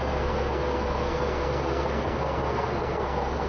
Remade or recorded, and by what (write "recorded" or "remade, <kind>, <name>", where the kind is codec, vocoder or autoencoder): remade, codec, SNAC